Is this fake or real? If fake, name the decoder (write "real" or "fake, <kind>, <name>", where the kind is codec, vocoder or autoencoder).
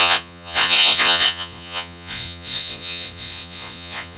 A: fake, vocoder, Vocos